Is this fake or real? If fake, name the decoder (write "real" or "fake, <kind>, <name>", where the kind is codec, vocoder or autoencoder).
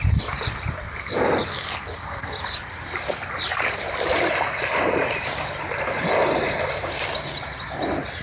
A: real